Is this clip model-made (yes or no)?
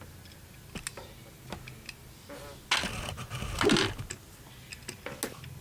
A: no